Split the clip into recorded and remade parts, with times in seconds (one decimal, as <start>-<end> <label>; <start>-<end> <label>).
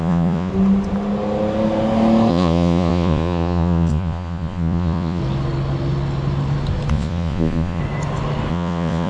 0.0-0.5 remade; 0.5-2.3 recorded; 2.3-5.2 remade; 5.2-6.9 recorded; 6.9-7.8 remade; 7.8-8.5 recorded; 8.5-9.1 remade